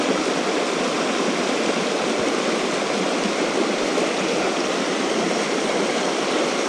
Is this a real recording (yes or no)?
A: yes